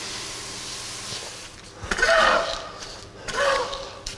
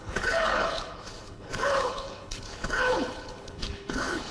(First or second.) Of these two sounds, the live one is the first